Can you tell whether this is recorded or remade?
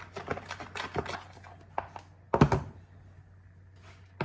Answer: recorded